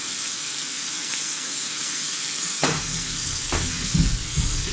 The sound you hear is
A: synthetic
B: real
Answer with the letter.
A